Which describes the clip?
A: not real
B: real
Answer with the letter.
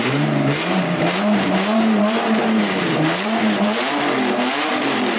A